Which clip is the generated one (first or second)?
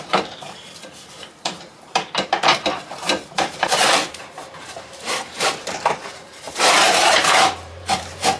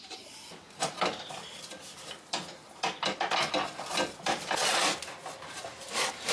first